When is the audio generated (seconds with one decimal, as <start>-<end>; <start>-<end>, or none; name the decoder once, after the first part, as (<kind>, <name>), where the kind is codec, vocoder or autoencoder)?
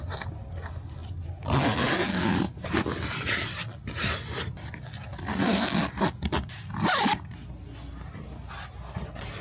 none